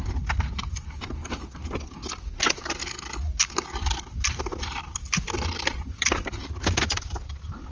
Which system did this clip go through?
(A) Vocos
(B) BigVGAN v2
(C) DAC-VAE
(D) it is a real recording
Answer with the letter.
D